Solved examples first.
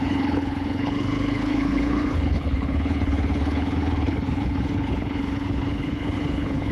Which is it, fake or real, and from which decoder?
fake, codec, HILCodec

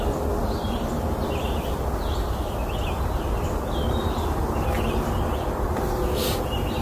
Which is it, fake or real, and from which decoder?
real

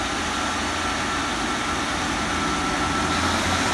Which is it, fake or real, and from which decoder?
real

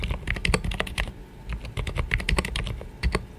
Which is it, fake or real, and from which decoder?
real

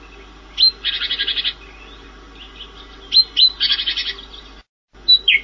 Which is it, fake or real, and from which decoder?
real